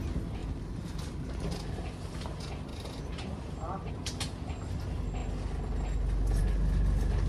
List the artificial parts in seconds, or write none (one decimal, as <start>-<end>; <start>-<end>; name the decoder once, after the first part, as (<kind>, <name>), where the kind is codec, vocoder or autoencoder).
0.4-1.3 (vocoder, BigVGAN v2); 2.7-3.9